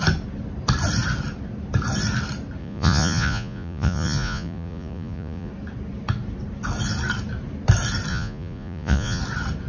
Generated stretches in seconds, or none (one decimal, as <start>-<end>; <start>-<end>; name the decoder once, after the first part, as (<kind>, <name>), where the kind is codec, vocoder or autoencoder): 2.6-5.5 (vocoder, Vocos); 8.1-9.2